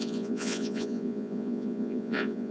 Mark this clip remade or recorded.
remade